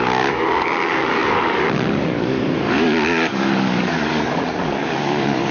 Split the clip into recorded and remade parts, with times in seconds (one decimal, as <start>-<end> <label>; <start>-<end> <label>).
0.0-5.5 remade